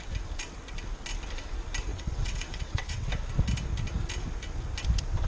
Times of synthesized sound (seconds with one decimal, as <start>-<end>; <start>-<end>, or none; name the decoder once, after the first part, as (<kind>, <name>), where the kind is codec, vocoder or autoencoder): 1.9-3.1 (vocoder, WaveNeXt)